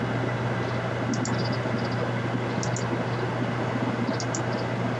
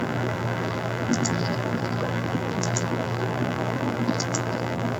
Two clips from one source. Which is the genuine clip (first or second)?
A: first